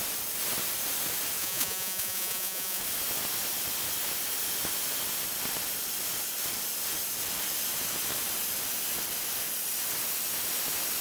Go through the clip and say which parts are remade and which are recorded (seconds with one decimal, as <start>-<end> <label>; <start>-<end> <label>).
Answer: 0.0-1.4 recorded; 1.4-2.8 remade; 2.8-11.0 recorded

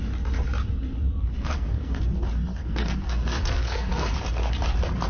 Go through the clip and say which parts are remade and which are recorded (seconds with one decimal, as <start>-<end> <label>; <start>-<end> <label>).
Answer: 0.0-1.2 recorded; 1.2-2.0 remade; 2.0-2.6 recorded; 2.6-4.1 remade; 4.1-5.1 recorded

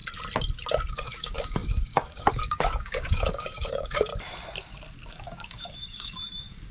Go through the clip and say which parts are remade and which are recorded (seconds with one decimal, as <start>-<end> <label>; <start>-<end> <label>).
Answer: 0.0-0.9 recorded; 0.9-4.1 remade; 4.1-5.1 recorded; 5.1-6.7 remade

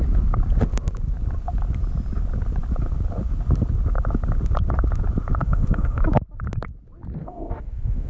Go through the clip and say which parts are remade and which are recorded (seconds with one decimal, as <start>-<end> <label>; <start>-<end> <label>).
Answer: 0.0-5.4 recorded; 5.4-6.0 remade; 6.0-7.2 recorded; 7.2-8.1 remade